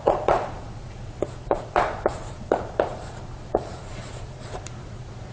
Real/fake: fake